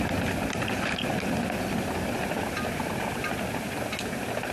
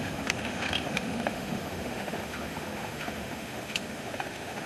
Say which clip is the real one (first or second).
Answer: first